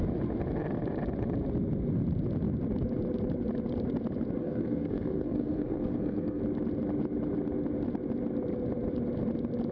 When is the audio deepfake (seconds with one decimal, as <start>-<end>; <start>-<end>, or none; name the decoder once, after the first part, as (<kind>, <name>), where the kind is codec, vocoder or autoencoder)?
4.4-6.4 (codec, SNAC)